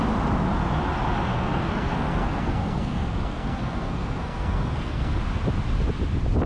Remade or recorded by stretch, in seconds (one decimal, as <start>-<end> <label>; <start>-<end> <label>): 0.0-1.3 recorded; 1.3-5.2 remade; 5.2-6.5 recorded